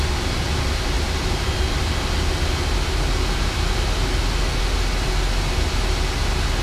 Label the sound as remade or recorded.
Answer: recorded